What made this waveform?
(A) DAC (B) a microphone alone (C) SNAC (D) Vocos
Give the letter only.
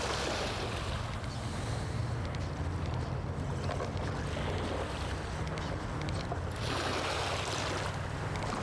B